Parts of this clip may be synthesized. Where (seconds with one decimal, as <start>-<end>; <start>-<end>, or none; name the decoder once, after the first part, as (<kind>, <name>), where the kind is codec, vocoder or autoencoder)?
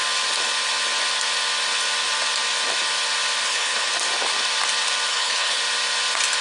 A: 3.4-3.9 (codec, HILCodec); 5.1-5.6